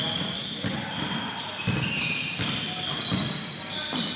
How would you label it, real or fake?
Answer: real